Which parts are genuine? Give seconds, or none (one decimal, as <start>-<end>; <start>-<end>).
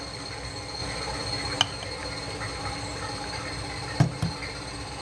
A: 0.0-5.0